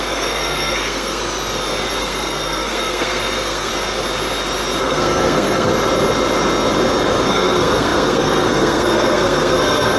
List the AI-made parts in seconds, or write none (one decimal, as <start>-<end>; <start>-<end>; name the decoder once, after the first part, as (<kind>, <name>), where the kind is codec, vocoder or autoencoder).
0.0-1.2 (codec, SNAC); 2.0-3.7; 4.8-5.7; 7.3-10.0